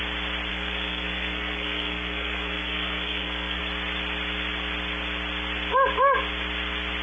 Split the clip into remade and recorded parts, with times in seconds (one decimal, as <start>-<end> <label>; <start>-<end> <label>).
0.0-0.5 recorded; 0.5-3.6 remade; 3.6-7.0 recorded